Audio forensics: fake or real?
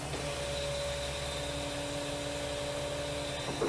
real